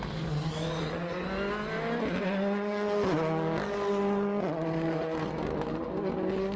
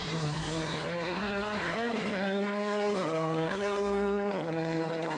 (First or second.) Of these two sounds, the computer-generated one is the second